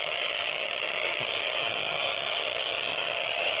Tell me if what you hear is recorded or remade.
remade